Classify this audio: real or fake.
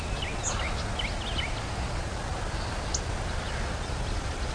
real